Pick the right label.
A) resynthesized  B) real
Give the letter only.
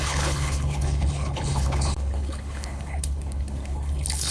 A